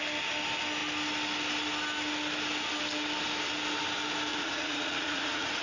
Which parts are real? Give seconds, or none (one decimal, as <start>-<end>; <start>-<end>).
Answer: 0.0-4.3